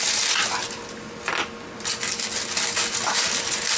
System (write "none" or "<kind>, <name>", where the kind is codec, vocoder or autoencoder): none